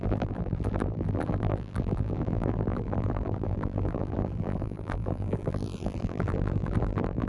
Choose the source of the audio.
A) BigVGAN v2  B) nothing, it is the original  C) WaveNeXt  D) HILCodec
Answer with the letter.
A